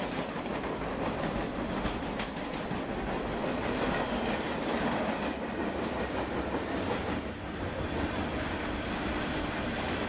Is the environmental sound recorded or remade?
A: recorded